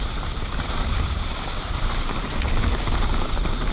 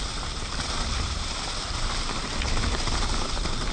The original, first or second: second